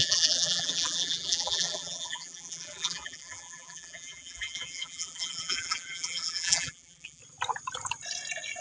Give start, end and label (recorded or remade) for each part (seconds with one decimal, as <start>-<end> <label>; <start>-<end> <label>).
0.0-7.2 remade; 7.2-8.6 recorded